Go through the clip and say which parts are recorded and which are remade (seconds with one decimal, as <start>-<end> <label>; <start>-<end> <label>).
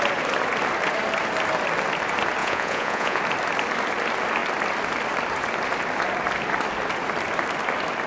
0.0-2.4 recorded; 2.4-3.2 remade; 3.2-8.1 recorded